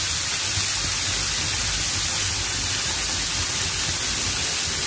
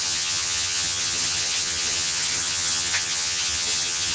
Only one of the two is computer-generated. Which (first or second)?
second